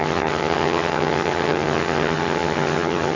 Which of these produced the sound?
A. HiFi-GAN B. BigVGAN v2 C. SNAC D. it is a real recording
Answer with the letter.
A